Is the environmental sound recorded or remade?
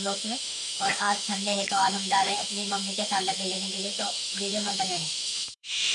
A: remade